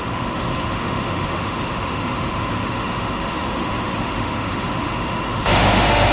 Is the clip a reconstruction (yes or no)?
yes